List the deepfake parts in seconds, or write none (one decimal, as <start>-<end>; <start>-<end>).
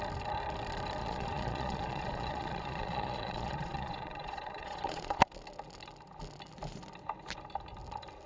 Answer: 1.0-5.2